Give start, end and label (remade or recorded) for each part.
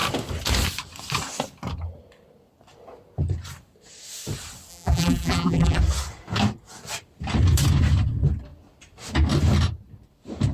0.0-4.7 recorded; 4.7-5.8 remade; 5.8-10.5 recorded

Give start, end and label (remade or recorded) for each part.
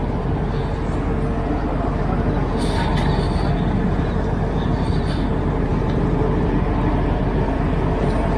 0.0-8.4 recorded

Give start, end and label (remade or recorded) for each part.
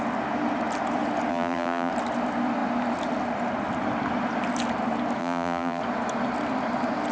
0.0-1.3 recorded; 1.3-1.9 remade; 1.9-5.2 recorded; 5.2-5.8 remade; 5.8-7.1 recorded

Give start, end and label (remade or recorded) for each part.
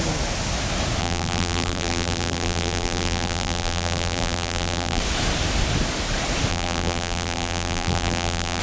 0.0-1.0 recorded; 1.0-5.0 remade; 5.0-6.5 recorded; 6.5-8.6 remade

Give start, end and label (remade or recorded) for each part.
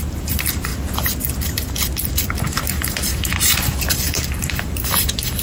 0.0-0.7 remade; 0.7-2.6 recorded; 2.6-5.4 remade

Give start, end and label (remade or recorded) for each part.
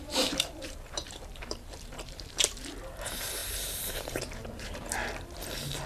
0.0-5.0 remade; 5.0-5.9 recorded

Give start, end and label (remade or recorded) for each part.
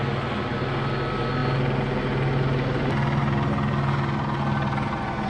0.0-5.3 recorded